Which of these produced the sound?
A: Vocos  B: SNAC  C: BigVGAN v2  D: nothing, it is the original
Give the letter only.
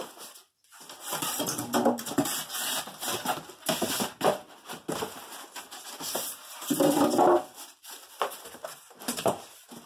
C